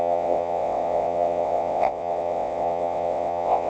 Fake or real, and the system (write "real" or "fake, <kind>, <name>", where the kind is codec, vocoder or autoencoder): fake, vocoder, WaveNeXt